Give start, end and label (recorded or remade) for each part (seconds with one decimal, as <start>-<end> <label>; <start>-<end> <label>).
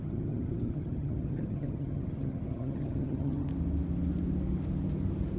0.0-3.5 remade; 3.5-5.4 recorded